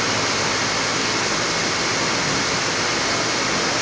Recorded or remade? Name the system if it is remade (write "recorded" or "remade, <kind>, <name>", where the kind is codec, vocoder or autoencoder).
recorded